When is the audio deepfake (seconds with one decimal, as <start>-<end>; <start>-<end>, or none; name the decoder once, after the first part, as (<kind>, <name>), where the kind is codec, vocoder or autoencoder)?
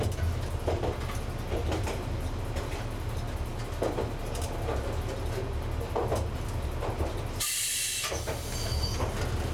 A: none